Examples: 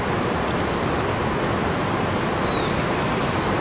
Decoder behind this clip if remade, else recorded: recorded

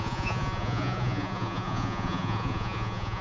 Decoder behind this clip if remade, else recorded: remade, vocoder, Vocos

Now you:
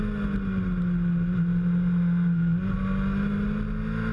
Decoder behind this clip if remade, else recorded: recorded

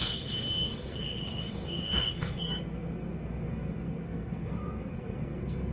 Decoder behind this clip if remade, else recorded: remade, codec, SNAC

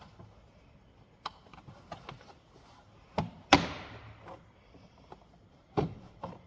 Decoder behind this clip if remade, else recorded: recorded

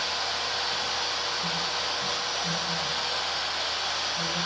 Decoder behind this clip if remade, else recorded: recorded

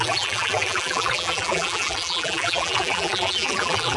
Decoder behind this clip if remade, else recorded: remade, vocoder, BigVGAN v2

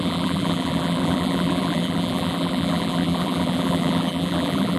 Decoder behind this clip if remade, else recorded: remade, vocoder, BigVGAN v2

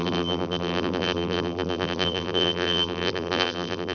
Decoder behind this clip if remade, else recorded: remade, vocoder, BigVGAN v2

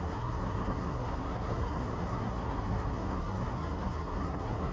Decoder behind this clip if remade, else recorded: remade, codec, SNAC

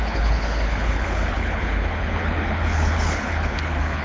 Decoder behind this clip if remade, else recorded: remade, codec, HILCodec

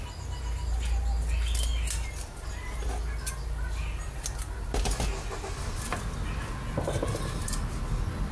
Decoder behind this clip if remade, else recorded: recorded